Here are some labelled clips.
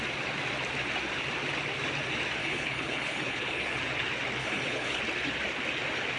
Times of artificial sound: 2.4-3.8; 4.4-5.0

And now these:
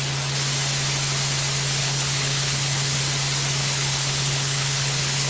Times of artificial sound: 1.8-3.0; 3.6-5.3

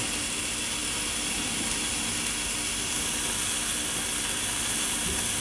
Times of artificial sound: none

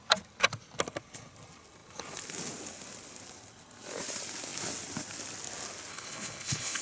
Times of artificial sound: 5.9-6.8